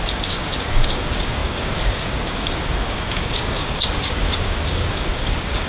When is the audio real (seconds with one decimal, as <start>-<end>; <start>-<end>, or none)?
none